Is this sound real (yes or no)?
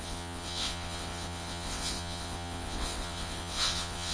no